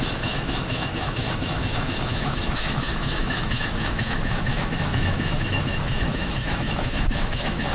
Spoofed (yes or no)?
yes